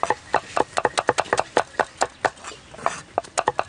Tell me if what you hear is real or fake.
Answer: real